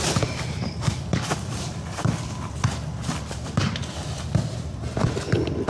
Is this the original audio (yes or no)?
no